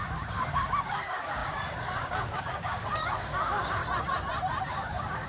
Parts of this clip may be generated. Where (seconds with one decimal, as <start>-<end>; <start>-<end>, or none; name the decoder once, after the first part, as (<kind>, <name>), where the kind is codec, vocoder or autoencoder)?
0.0-3.8 (codec, DAC); 4.7-5.3